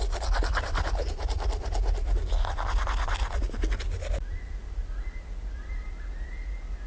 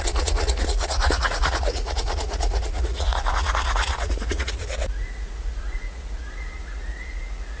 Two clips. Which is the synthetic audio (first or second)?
second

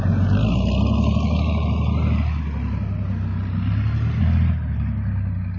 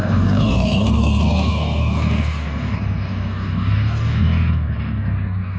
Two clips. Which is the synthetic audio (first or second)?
second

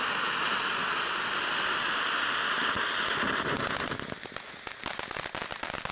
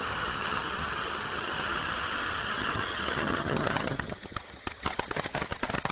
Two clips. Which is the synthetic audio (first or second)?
second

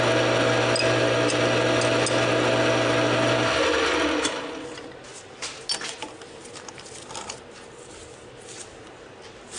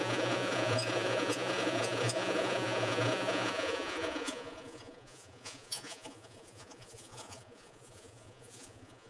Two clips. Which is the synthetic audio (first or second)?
second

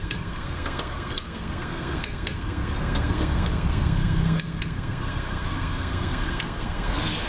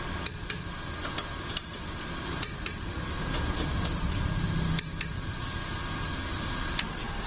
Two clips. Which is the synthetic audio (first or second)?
first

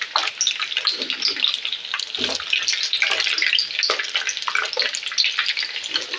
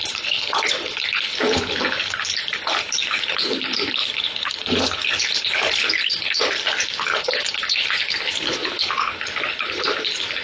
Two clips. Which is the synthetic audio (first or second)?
second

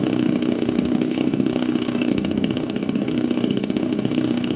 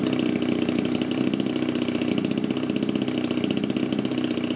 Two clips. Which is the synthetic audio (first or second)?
first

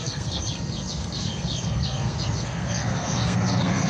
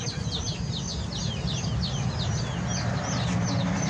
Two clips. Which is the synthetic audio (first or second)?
first